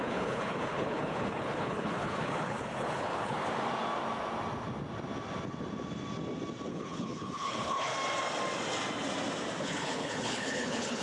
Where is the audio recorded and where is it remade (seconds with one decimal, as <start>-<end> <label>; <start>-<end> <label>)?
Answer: 0.0-3.4 remade; 3.4-6.7 recorded; 6.7-7.9 remade; 7.9-9.6 recorded; 9.6-11.0 remade